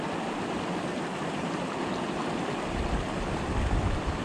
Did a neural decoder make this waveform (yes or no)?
no